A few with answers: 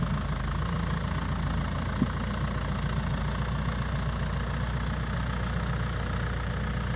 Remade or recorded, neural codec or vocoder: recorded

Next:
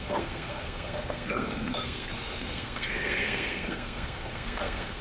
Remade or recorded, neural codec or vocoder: remade, codec, SNAC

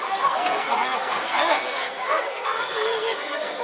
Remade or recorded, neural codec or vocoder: remade, codec, SNAC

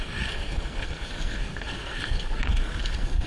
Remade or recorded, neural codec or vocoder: remade, codec, SNAC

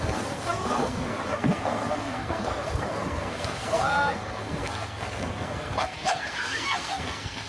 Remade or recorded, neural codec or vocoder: remade, codec, SNAC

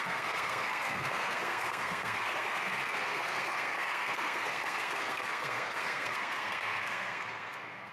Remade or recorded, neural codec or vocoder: remade, codec, SNAC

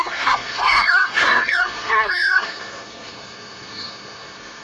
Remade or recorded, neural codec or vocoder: remade, codec, SNAC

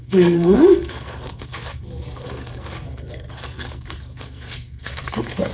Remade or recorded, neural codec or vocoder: remade, codec, SNAC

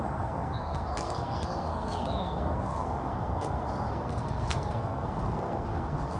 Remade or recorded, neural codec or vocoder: remade, codec, SNAC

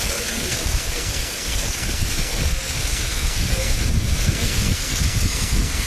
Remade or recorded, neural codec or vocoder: remade, codec, SNAC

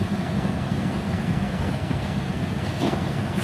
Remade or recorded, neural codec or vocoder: remade, codec, SNAC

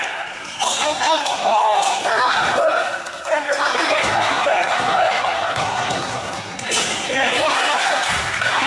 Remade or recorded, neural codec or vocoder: remade, codec, SNAC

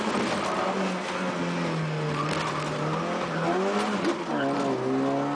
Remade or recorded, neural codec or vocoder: recorded